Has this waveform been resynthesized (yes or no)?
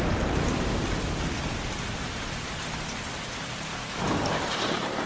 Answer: no